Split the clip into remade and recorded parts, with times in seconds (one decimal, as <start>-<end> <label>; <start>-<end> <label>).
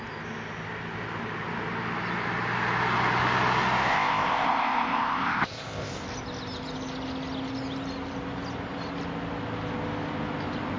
0.0-3.9 recorded; 3.9-5.9 remade; 5.9-10.8 recorded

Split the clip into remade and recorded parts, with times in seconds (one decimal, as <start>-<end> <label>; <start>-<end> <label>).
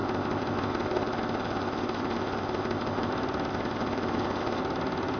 0.0-3.1 remade; 3.1-3.5 recorded; 3.5-4.6 remade; 4.6-5.2 recorded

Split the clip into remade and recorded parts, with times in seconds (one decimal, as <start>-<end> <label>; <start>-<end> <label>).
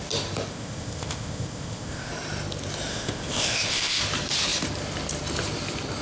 0.0-0.5 recorded; 0.5-2.1 remade; 2.1-2.9 recorded; 2.9-4.0 remade; 4.0-6.0 recorded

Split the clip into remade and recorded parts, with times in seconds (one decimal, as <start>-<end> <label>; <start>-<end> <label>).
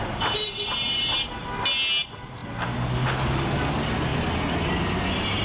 0.0-5.4 recorded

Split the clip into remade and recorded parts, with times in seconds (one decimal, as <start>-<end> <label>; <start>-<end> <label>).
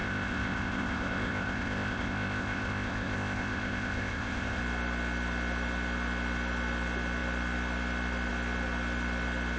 0.0-4.6 remade; 4.6-9.6 recorded